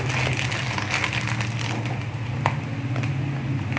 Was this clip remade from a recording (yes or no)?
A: no